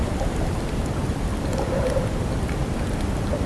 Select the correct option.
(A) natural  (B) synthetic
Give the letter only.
A